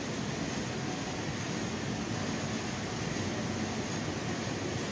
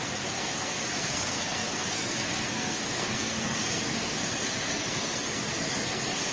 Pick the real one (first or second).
first